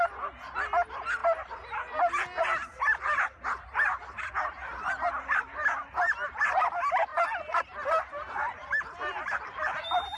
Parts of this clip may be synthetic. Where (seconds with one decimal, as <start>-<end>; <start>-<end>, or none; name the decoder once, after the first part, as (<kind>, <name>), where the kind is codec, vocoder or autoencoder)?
none